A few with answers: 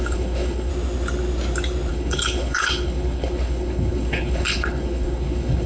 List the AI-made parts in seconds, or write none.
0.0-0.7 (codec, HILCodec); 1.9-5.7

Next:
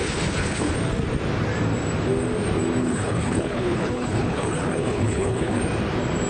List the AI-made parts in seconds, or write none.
0.0-0.7 (codec, HILCodec); 2.8-5.6